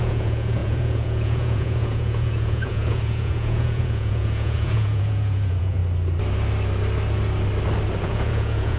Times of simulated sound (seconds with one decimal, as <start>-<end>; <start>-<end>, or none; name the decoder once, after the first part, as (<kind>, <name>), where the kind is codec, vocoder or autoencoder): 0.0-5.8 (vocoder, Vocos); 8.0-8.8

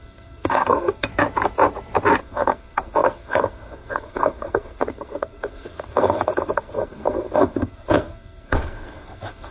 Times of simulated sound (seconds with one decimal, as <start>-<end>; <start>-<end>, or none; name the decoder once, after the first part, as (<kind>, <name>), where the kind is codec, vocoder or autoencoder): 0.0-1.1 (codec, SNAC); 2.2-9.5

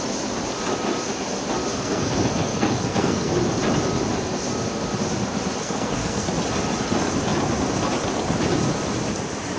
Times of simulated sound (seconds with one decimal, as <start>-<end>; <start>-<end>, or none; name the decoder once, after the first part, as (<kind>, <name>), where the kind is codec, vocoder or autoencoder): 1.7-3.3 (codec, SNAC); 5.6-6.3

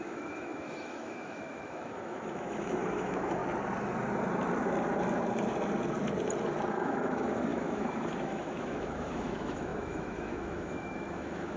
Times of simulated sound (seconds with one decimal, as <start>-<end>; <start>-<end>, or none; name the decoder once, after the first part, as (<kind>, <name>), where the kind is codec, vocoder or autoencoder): 0.0-3.4 (autoencoder, DAC-VAE); 6.7-11.6

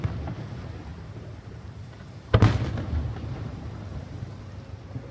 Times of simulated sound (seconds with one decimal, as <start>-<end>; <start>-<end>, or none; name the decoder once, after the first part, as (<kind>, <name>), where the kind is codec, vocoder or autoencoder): 0.9-2.4 (vocoder, BigVGAN v2); 3.1-3.7

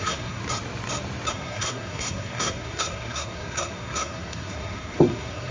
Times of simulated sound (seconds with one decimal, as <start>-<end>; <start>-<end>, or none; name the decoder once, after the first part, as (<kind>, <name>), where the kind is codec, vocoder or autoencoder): 0.0-0.4 (codec, SNAC); 1.3-5.5